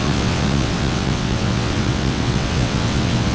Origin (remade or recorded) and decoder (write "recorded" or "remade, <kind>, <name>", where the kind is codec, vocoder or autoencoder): remade, vocoder, WaveNeXt